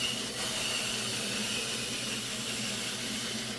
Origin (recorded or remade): recorded